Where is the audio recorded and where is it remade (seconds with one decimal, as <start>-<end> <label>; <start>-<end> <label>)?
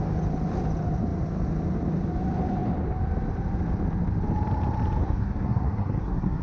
0.0-5.0 recorded; 5.0-6.4 remade